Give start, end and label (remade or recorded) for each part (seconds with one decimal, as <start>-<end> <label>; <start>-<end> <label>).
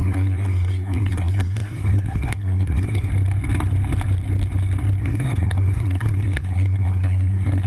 0.0-3.1 remade; 3.1-5.0 recorded; 5.0-7.7 remade